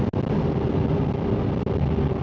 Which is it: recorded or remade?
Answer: recorded